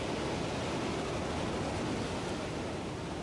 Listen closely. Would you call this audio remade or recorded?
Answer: recorded